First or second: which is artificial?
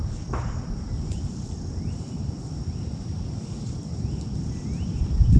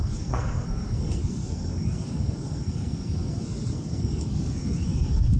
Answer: second